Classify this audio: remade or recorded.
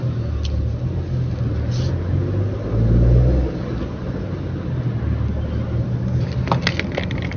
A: recorded